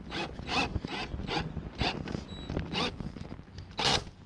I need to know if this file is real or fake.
real